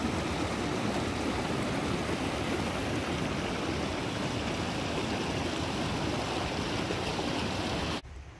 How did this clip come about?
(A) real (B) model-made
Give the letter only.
A